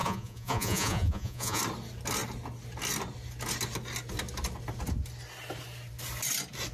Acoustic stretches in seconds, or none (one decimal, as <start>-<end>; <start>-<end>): 1.6-6.7